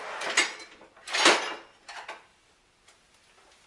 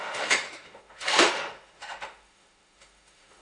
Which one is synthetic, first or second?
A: second